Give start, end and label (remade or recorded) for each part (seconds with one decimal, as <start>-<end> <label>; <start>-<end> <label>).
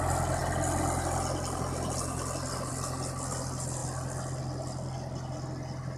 0.0-6.0 recorded